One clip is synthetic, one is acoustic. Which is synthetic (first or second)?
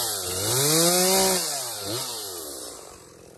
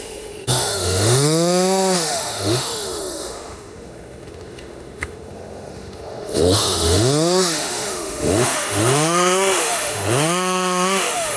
second